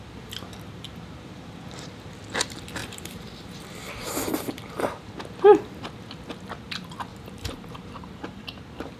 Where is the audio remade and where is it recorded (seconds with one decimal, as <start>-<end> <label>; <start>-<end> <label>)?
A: 0.0-2.8 recorded; 2.8-5.1 remade; 5.1-7.1 recorded; 7.1-8.4 remade; 8.4-9.0 recorded